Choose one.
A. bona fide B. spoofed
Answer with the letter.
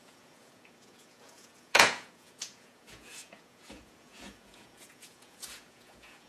B